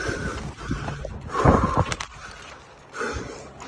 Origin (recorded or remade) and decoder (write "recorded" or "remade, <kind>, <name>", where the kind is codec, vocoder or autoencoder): recorded